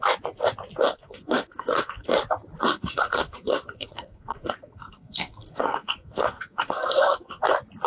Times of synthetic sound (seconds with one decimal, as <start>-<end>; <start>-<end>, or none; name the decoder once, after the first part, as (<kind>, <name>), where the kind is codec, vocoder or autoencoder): 0.9-2.1 (codec, SNAC); 2.7-7.4